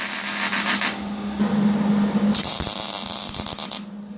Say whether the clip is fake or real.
real